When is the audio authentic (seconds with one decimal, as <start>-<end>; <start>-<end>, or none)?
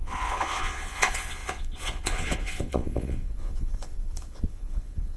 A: none